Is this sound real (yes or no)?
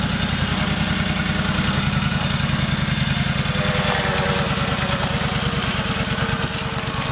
yes